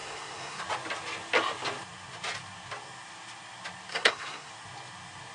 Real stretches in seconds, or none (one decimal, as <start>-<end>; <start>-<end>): 0.6-3.9; 4.5-5.3